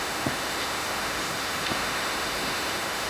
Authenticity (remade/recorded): remade